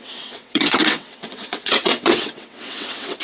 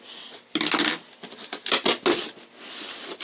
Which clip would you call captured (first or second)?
second